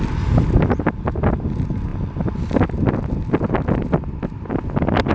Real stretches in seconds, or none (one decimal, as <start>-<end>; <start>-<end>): 0.0-5.1